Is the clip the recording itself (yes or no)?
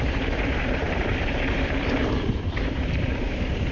no